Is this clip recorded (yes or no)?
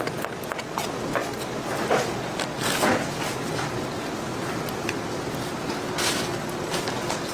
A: yes